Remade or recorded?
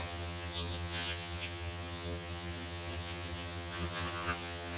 remade